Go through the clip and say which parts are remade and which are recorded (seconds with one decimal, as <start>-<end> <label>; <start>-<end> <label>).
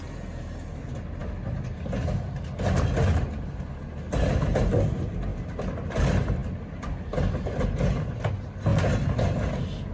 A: 0.0-9.9 recorded